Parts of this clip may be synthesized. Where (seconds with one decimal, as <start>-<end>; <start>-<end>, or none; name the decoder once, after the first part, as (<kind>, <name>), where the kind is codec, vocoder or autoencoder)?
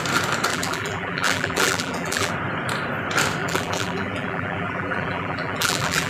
0.5-2.3 (vocoder, BigVGAN v2); 3.4-6.1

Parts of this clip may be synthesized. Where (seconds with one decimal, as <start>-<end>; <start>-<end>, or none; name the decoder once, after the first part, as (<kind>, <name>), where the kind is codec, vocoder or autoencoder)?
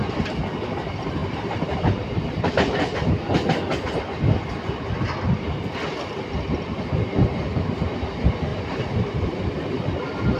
1.2-2.5 (vocoder, BigVGAN v2); 8.5-10.0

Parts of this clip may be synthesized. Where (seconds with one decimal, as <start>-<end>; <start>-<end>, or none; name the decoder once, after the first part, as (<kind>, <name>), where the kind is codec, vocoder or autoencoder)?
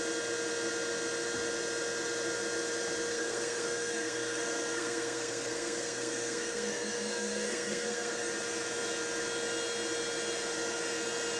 3.1-8.3 (codec, SNAC)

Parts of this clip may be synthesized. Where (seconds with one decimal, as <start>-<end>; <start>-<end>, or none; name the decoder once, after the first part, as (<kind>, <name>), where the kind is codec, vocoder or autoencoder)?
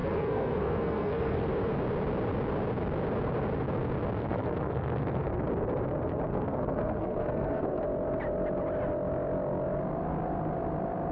0.0-1.5 (codec, SNAC); 4.2-5.4; 6.3-7.8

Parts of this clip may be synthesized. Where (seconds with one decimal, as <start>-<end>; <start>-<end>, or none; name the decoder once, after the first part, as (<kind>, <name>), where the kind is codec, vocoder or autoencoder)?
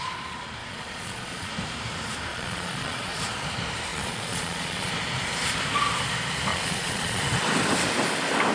0.6-1.5 (vocoder, Vocos); 2.3-3.2; 3.9-4.9; 6.5-7.2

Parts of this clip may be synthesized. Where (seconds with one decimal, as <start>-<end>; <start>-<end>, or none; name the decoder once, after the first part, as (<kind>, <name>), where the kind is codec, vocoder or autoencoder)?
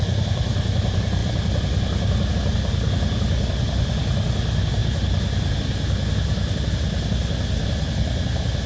none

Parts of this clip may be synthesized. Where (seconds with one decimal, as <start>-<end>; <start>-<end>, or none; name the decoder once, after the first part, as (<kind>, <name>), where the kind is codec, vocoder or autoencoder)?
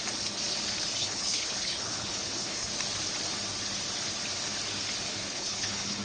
1.0-2.7 (codec, HILCodec); 5.1-6.0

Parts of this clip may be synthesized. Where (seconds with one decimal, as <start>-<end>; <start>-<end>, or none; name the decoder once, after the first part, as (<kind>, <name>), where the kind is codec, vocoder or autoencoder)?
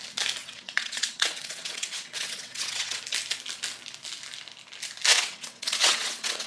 0.4-3.0 (vocoder, WaveNeXt); 5.1-6.5